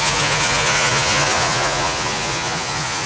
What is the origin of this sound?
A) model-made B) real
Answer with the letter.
A